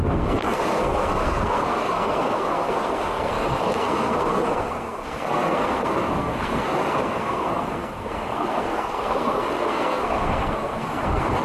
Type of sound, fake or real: fake